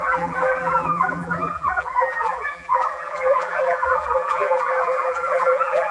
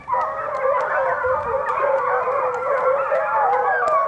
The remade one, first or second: first